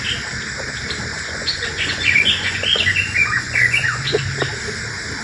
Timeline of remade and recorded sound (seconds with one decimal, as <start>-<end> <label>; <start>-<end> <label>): 0.0-1.1 recorded; 1.1-4.2 remade; 4.2-5.2 recorded